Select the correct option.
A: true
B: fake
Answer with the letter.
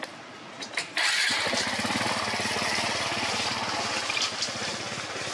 A